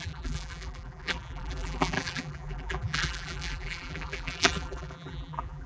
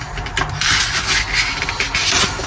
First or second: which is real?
second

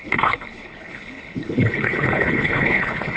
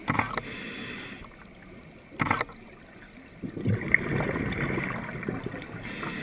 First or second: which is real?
second